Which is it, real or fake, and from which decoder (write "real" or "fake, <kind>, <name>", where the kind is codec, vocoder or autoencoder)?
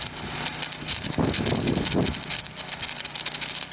real